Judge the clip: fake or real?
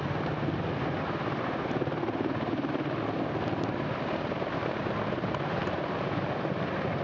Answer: real